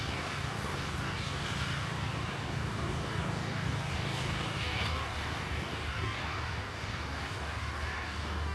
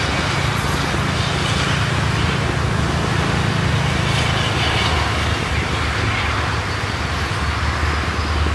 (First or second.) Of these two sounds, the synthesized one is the first